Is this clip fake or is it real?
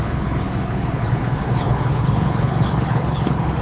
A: fake